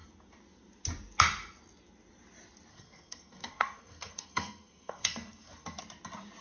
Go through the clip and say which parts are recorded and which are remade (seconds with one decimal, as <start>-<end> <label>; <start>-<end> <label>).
0.0-2.7 recorded; 2.7-5.8 remade; 5.8-6.4 recorded